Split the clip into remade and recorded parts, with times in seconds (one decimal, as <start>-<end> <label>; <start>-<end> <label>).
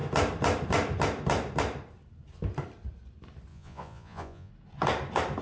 0.0-3.5 recorded; 3.5-4.5 remade; 4.5-5.4 recorded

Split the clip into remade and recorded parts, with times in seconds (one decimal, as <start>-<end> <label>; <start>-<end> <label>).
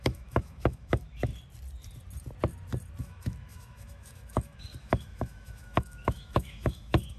0.0-1.3 remade; 1.3-3.0 recorded; 3.0-7.2 remade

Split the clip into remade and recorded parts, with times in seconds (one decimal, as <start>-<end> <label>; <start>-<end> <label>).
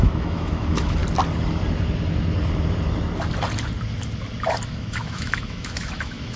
0.0-1.0 remade; 1.0-4.7 recorded; 4.7-6.4 remade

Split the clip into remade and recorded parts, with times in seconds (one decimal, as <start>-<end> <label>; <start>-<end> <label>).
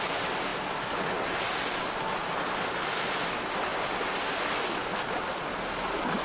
0.0-6.2 recorded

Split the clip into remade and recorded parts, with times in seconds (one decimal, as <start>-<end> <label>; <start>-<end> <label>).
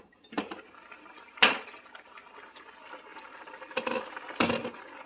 0.0-5.1 recorded